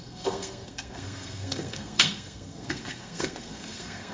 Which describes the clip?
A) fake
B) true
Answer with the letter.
A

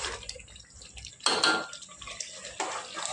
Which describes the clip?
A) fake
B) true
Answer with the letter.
B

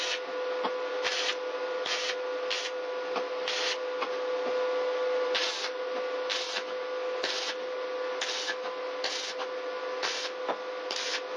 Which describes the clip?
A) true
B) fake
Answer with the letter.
A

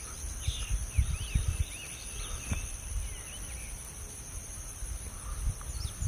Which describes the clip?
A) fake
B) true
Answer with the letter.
B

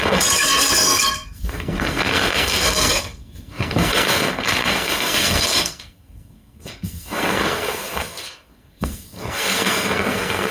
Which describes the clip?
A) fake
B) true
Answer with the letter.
A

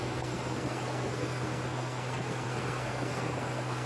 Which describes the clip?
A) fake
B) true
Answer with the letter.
A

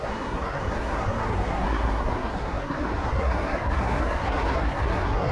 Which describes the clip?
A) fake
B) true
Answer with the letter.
A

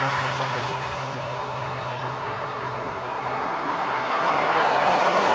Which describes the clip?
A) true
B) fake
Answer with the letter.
B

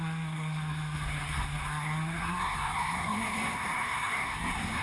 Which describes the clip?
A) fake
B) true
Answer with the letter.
A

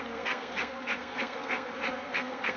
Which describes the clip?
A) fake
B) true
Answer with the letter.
A